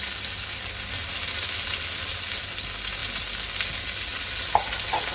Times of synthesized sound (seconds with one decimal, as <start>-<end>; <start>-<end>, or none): none